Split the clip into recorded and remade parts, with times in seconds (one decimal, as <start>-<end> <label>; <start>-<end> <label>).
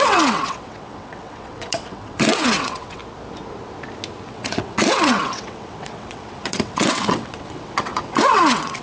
0.0-3.0 remade; 3.0-4.3 recorded; 4.3-8.8 remade